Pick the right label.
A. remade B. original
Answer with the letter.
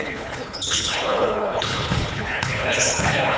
A